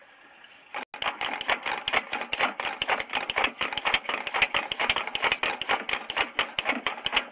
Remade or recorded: recorded